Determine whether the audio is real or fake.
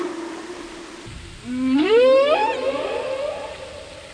real